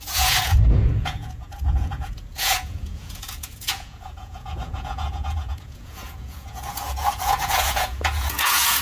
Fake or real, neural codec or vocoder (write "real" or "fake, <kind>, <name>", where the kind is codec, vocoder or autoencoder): fake, vocoder, Vocos